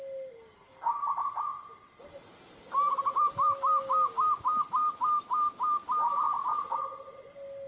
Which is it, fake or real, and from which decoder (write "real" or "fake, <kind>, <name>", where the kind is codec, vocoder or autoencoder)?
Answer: real